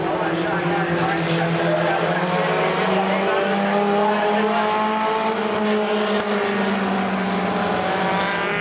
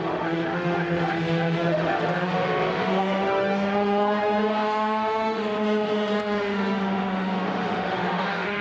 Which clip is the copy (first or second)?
second